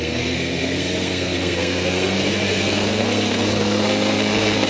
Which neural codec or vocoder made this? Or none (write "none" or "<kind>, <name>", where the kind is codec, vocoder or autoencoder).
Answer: codec, SNAC